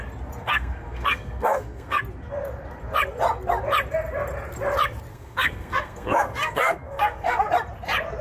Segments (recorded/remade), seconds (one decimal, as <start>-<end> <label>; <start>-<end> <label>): 0.0-0.4 recorded; 0.4-2.0 remade; 2.0-5.1 recorded; 5.1-7.4 remade; 7.4-8.2 recorded